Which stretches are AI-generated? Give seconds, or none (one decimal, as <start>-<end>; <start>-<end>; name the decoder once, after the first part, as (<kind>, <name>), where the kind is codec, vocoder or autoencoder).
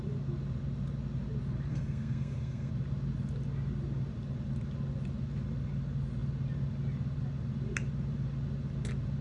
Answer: 1.7-2.7 (codec, SNAC)